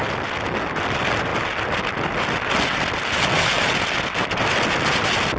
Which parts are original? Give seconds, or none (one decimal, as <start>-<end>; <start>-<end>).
0.0-5.4